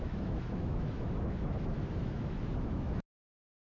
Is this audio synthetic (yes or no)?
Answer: yes